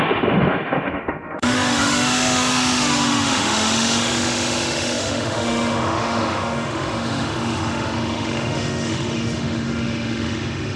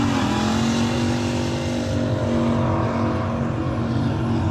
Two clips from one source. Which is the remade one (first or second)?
first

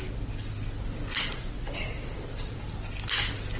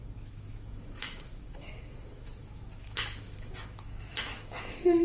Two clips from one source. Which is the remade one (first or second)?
second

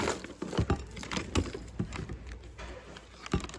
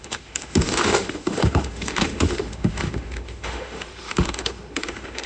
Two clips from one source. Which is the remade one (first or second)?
second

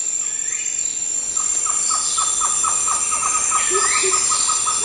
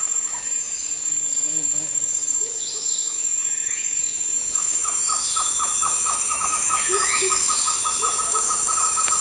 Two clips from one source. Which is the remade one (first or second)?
second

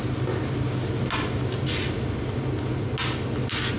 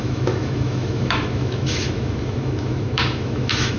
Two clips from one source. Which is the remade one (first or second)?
second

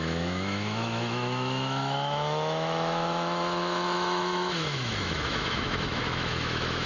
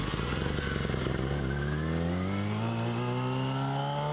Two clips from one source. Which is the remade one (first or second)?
first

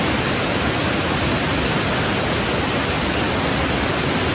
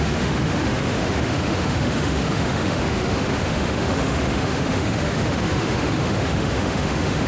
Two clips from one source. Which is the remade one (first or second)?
second